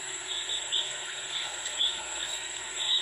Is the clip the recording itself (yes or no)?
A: no